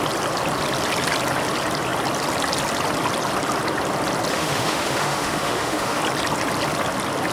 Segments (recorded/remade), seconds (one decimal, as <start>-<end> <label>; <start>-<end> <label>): 0.0-4.3 recorded; 4.3-6.0 remade; 6.0-7.3 recorded